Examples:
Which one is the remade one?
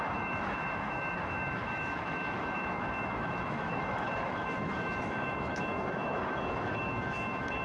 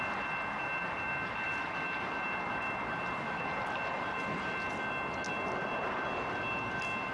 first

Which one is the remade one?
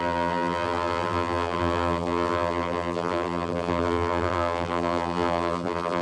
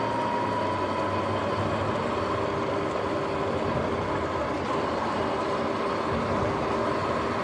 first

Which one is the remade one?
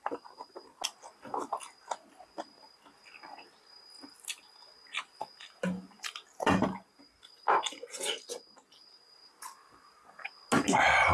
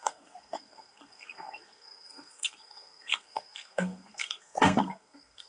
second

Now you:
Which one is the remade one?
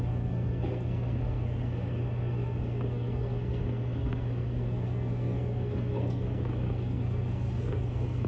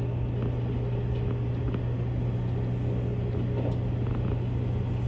first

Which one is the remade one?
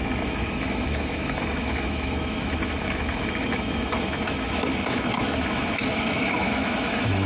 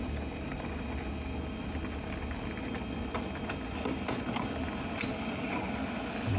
first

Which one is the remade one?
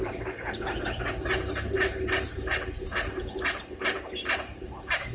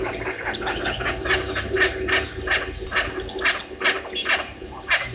first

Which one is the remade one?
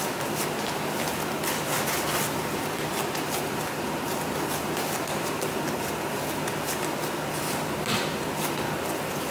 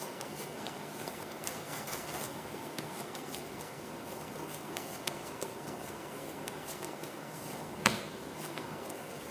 second